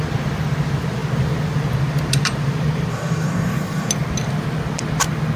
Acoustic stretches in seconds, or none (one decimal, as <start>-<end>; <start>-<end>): 0.0-2.9; 3.9-5.4